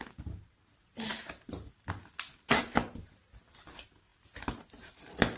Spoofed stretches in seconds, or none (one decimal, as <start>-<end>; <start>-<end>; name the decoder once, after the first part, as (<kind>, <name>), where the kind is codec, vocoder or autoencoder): none